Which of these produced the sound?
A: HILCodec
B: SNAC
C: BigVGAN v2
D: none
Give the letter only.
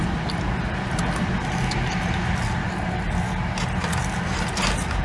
D